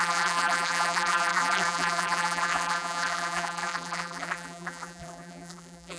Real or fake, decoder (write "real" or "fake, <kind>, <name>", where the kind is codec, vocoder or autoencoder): fake, vocoder, BigVGAN v2